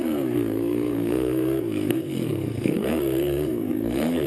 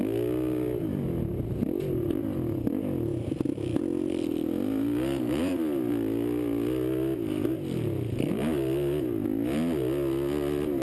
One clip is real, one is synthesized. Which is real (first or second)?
second